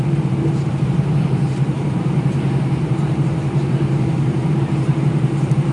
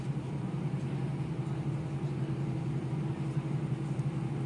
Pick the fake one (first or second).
first